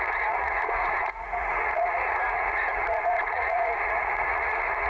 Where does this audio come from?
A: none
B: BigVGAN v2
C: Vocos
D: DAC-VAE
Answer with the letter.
C